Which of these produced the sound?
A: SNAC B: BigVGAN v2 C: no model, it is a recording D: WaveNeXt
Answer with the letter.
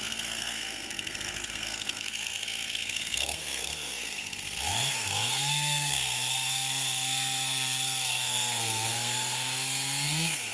A